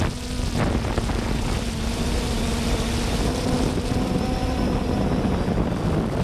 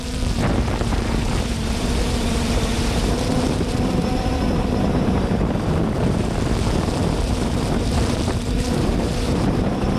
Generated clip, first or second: second